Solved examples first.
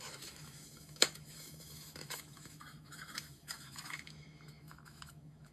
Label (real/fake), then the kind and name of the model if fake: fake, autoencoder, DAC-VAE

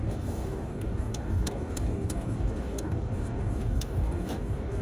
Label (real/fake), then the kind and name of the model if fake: fake, codec, DAC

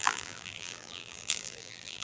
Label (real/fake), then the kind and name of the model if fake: fake, vocoder, BigVGAN v2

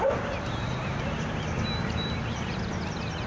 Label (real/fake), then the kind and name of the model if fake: real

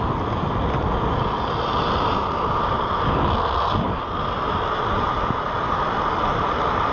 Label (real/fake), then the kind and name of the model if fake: real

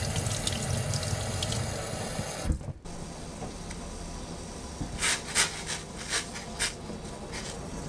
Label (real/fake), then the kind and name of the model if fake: real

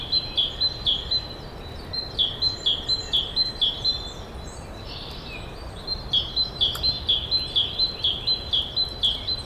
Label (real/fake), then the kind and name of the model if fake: real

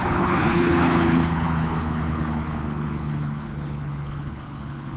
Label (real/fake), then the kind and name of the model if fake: fake, codec, HILCodec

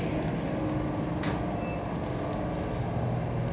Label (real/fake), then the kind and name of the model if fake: real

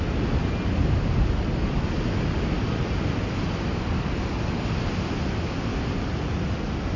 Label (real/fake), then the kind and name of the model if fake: real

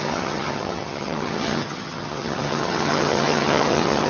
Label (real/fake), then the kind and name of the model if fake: fake, vocoder, HiFi-GAN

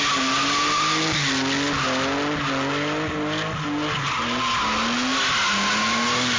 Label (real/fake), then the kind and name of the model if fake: real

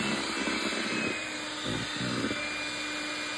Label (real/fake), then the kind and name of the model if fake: real